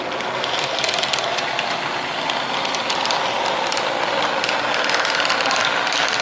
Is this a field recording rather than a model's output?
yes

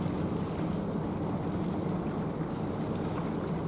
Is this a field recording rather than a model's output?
yes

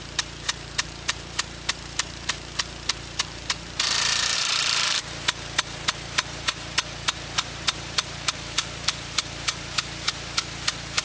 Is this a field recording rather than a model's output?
no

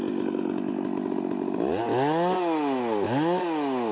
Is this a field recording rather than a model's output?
yes